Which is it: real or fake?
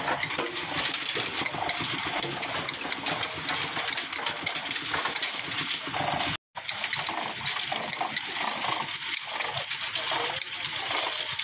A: real